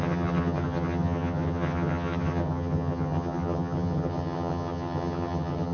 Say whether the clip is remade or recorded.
remade